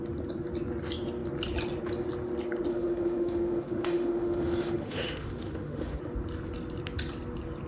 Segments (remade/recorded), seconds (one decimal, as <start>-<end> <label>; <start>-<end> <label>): 0.0-2.7 recorded; 2.7-6.0 remade; 6.0-7.7 recorded